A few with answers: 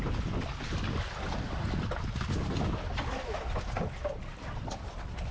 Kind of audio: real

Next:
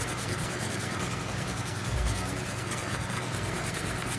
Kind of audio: fake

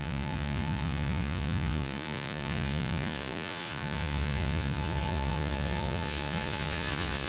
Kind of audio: fake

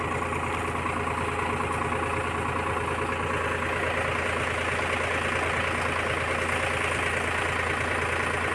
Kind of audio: real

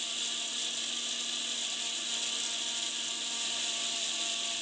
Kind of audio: real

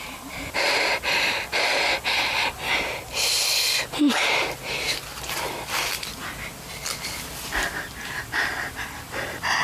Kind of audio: real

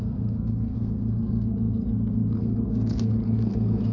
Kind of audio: fake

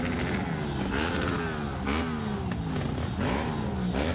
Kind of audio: real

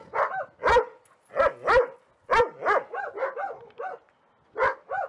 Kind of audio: real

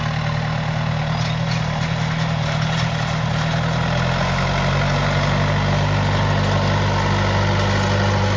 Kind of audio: real